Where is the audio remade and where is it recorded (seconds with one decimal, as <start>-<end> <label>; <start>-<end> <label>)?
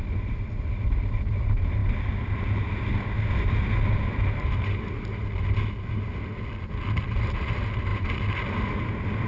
0.0-9.3 recorded